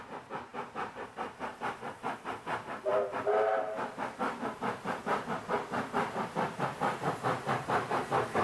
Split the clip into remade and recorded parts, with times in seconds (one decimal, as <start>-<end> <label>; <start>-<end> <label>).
0.0-8.4 recorded